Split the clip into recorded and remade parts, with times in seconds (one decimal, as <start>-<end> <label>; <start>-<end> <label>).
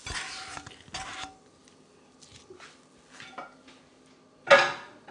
0.0-5.1 recorded